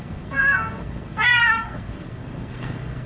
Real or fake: fake